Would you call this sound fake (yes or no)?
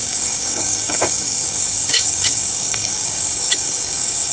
yes